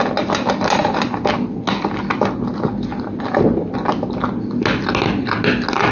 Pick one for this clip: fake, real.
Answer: real